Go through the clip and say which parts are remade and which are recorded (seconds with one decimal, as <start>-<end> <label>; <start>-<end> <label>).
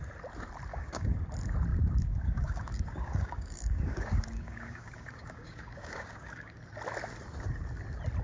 0.0-0.7 recorded; 0.7-1.2 remade; 1.2-1.7 recorded; 1.7-6.6 remade; 6.6-8.2 recorded